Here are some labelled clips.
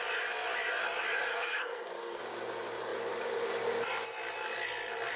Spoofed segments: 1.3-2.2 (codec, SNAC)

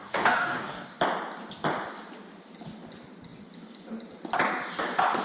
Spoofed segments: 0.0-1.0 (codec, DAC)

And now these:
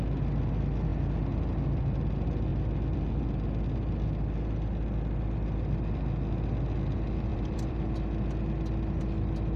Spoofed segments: 7.3-7.9 (vocoder, BigVGAN v2)

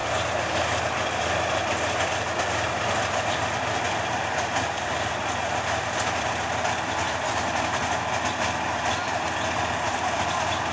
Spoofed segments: 2.7-10.7 (vocoder, BigVGAN v2)

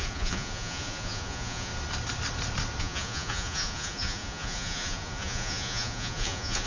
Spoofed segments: 0.0-1.7 (vocoder, Vocos); 2.8-6.7

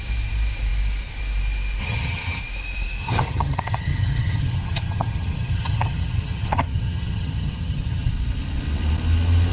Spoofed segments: 1.8-2.4 (vocoder, HiFi-GAN); 3.0-8.1

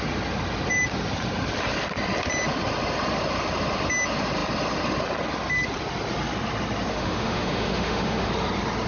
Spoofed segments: 6.9-8.3 (autoencoder, DAC-VAE)

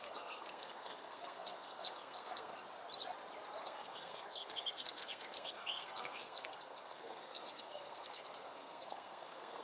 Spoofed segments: 0.0-2.5 (codec, SNAC); 3.6-9.6